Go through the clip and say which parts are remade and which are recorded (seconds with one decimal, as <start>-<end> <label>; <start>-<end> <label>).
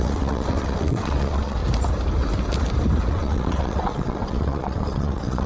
0.0-1.6 remade; 1.6-3.1 recorded; 3.1-5.5 remade